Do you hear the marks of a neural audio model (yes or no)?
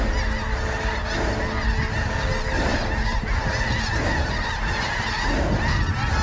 no